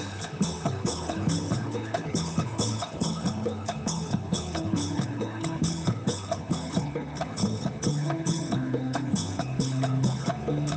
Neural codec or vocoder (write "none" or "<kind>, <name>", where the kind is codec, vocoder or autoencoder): codec, HILCodec